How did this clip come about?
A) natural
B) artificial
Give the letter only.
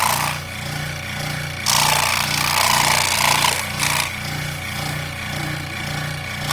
A